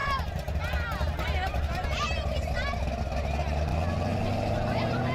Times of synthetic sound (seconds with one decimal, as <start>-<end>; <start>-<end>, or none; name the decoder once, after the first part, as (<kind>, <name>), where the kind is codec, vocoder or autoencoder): 0.0-0.6 (vocoder, BigVGAN v2)